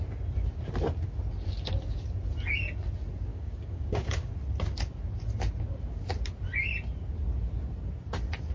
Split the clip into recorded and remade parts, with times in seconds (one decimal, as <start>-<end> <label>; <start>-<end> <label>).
0.0-3.3 recorded; 3.3-4.3 remade; 4.3-8.5 recorded